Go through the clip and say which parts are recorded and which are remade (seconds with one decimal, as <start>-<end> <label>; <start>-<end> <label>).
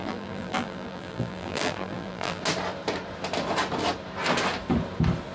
0.0-2.4 remade; 2.4-5.3 recorded